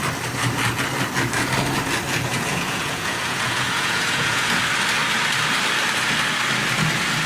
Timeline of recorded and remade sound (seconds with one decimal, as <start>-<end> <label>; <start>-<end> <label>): 0.0-2.3 recorded; 2.3-4.6 remade; 4.6-7.3 recorded